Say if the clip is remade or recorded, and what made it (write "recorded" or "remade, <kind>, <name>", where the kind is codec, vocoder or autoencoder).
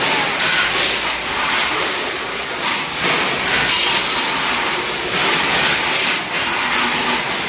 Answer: recorded